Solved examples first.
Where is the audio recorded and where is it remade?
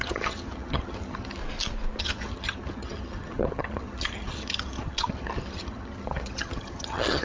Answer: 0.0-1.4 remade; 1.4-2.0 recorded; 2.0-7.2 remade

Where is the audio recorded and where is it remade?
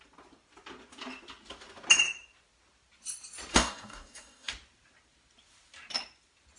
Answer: 0.0-3.5 recorded; 3.5-4.5 remade; 4.5-6.6 recorded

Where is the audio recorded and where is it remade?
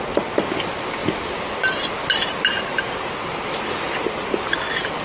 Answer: 0.0-5.0 recorded